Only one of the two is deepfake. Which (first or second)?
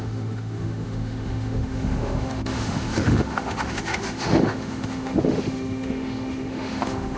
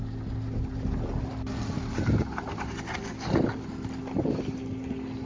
first